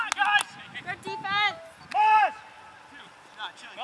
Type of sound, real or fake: real